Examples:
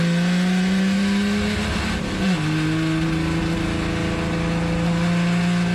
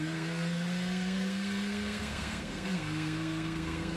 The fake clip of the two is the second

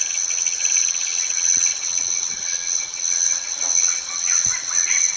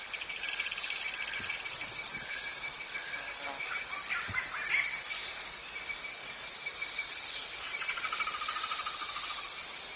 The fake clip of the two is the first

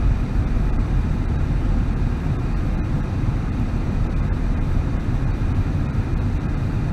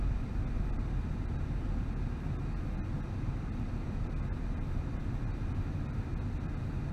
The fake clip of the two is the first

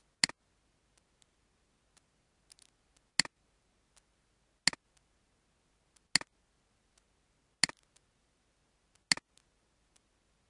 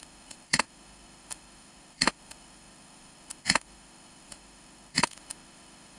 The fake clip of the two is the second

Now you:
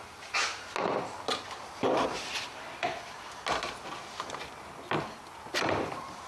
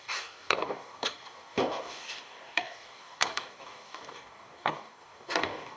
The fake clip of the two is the second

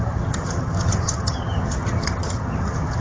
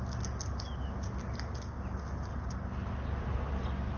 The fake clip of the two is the first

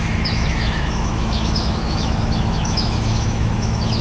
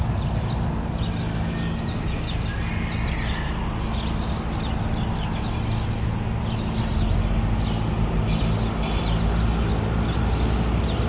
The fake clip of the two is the first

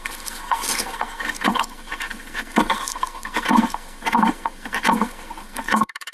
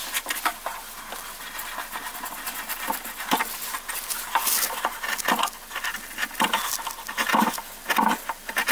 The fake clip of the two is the first